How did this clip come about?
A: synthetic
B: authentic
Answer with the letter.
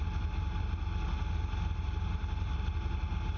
B